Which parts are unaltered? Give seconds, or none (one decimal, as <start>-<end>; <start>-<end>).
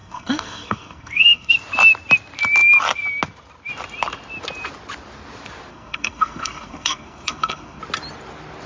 1.5-5.7; 7.8-8.7